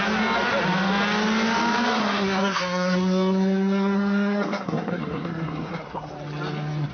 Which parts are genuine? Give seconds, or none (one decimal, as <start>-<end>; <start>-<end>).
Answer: 0.0-2.0; 6.1-6.9